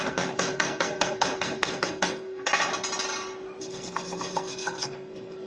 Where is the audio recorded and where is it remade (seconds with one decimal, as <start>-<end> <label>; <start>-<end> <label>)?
0.0-2.5 remade; 2.5-3.6 recorded; 3.6-5.5 remade